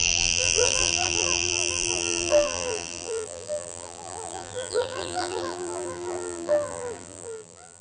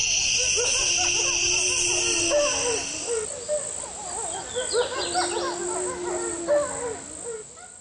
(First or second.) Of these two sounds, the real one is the second